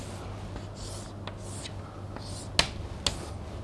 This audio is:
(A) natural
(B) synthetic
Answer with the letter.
A